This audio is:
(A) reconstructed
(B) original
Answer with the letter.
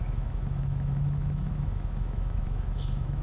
A